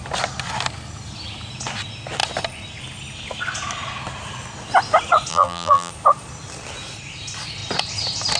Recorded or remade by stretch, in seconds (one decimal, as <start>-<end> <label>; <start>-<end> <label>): 0.0-5.3 recorded; 5.3-5.9 remade; 5.9-8.4 recorded